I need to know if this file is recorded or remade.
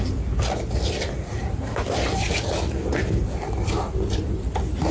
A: recorded